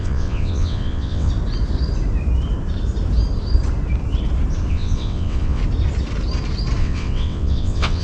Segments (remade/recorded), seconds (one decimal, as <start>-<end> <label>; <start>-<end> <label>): 0.0-1.3 remade; 1.3-4.7 recorded; 4.7-5.6 remade; 5.6-6.8 recorded; 6.8-8.0 remade